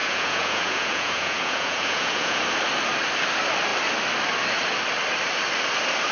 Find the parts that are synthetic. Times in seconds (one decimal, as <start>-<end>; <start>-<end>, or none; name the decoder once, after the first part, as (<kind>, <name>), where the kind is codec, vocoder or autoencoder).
0.0-2.4 (vocoder, Vocos)